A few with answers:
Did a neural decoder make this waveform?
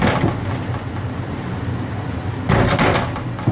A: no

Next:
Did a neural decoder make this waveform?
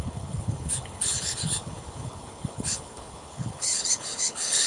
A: yes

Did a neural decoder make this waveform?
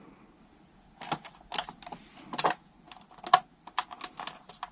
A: no